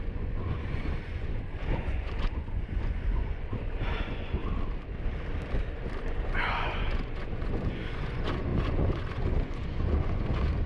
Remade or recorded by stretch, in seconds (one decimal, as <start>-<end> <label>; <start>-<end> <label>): 0.0-4.4 remade; 4.4-6.0 recorded; 6.0-10.7 remade